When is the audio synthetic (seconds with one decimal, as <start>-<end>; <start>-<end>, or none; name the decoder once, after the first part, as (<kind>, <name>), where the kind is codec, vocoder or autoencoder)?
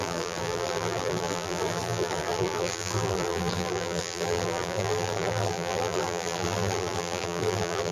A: 0.0-7.9 (vocoder, BigVGAN v2)